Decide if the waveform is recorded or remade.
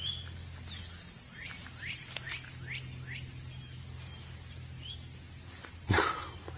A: recorded